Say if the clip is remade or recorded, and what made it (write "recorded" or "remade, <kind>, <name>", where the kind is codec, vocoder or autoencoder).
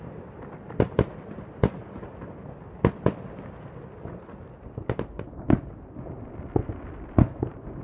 recorded